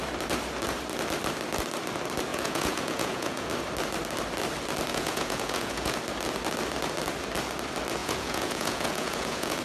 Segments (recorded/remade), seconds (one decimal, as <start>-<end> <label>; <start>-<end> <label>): 0.0-2.3 recorded; 2.3-3.5 remade; 3.5-4.9 recorded; 4.9-6.0 remade; 6.0-8.0 recorded; 8.0-9.6 remade